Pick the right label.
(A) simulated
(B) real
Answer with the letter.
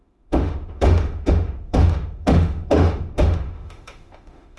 A